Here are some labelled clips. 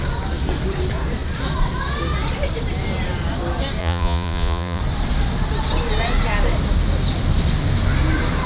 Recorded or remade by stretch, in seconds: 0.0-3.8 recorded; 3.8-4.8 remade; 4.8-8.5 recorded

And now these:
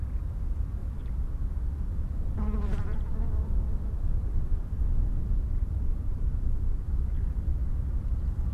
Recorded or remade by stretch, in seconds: 0.0-0.8 recorded; 0.8-1.3 remade; 1.3-3.7 recorded; 3.7-4.8 remade; 4.8-5.3 recorded; 5.3-6.9 remade; 6.9-8.5 recorded